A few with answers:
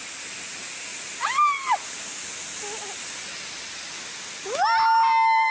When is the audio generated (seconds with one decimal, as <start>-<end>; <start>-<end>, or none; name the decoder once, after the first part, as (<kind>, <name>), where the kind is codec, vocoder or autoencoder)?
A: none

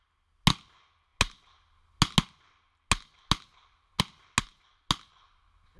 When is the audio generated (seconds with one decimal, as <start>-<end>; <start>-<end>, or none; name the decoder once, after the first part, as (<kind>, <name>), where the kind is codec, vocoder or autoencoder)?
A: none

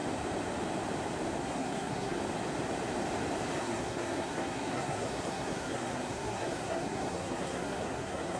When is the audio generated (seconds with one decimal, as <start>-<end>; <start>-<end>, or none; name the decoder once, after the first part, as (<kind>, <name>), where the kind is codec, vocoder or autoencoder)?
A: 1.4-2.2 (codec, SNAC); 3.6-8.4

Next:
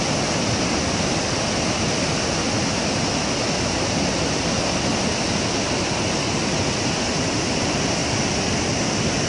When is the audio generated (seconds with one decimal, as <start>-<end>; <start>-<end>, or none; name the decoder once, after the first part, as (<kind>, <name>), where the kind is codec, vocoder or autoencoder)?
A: none

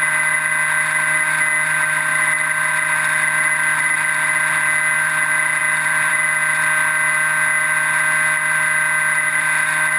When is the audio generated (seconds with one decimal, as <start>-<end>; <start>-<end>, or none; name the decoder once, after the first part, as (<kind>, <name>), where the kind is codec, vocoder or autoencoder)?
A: none

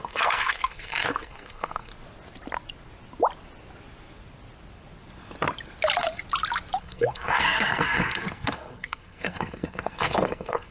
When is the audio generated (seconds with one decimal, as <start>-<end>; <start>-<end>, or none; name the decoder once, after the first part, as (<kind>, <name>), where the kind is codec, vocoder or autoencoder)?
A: 0.0-1.9 (codec, SNAC); 6.8-10.7